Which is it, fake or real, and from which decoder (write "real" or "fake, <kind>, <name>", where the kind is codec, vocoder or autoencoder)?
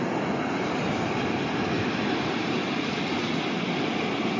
real